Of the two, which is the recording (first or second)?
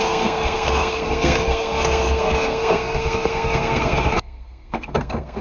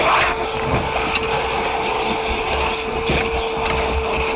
second